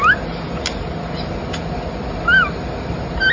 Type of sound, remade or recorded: recorded